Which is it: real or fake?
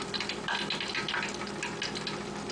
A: real